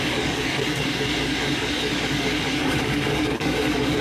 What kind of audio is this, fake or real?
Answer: fake